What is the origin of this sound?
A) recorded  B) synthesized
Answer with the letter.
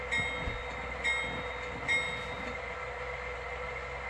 A